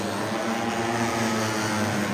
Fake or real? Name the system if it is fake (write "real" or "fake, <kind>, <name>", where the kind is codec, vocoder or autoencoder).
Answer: real